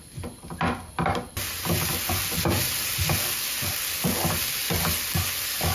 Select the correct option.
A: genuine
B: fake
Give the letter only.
A